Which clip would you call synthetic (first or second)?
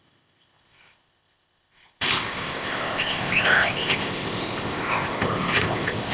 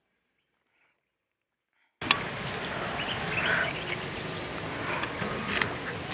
first